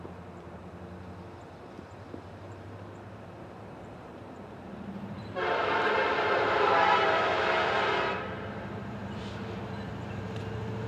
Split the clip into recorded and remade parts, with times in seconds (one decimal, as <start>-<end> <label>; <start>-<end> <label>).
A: 0.0-0.6 remade; 0.6-1.6 recorded; 1.6-10.9 remade